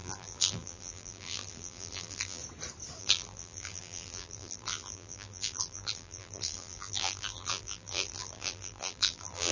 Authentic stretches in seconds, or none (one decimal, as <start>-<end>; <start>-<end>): 2.4-3.0